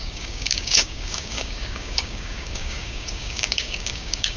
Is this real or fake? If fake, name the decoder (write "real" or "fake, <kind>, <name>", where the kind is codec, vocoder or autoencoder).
fake, codec, DAC